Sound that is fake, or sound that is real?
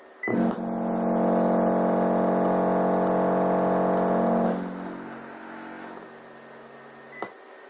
real